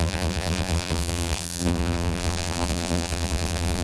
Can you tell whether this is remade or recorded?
remade